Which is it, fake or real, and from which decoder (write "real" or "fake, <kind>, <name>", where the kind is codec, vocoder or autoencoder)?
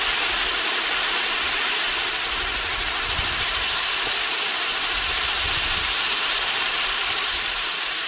real